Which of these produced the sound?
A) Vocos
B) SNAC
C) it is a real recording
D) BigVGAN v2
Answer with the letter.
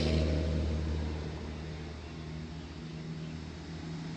C